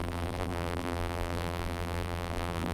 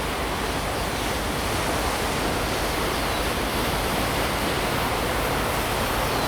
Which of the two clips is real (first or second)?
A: second